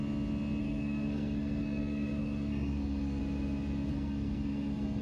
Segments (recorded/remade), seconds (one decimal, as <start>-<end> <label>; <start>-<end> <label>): 0.0-0.6 recorded; 0.6-3.2 remade; 3.2-3.9 recorded; 3.9-5.0 remade